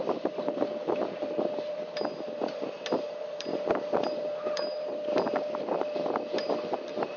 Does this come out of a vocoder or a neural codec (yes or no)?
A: yes